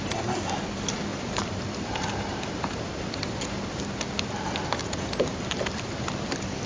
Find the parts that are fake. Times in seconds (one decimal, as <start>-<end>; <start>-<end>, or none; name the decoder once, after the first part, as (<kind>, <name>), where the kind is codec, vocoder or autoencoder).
1.1-3.1 (vocoder, BigVGAN v2); 4.8-5.8